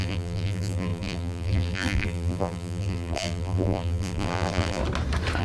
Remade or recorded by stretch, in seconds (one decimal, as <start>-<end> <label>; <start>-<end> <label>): 0.0-4.8 remade; 4.8-5.4 recorded

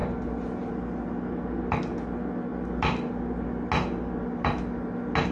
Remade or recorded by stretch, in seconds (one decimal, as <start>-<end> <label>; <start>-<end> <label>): 0.0-5.3 recorded

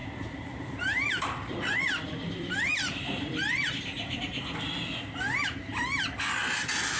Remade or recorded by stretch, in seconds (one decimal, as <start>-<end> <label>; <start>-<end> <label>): 0.0-4.2 remade; 4.2-7.0 recorded